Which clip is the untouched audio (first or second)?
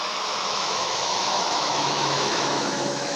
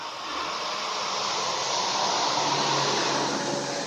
second